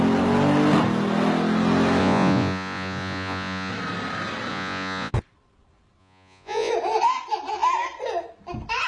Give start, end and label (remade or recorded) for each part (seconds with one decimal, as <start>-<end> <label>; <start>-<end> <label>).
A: 0.0-2.0 recorded; 2.0-3.7 remade; 3.7-4.5 recorded; 4.5-5.1 remade; 5.1-6.0 recorded; 6.0-6.7 remade; 6.7-8.9 recorded